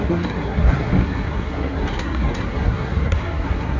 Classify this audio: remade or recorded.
remade